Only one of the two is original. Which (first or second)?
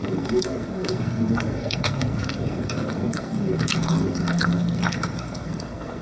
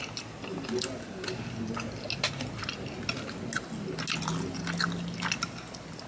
second